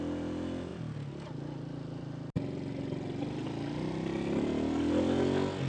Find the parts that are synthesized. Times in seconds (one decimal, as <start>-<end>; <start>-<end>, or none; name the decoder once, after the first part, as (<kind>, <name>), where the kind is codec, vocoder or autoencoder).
none